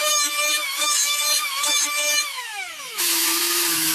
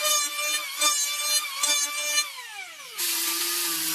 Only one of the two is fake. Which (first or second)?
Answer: first